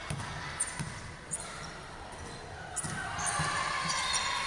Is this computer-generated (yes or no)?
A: no